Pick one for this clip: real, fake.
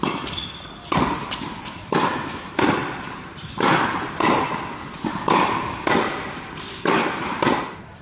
real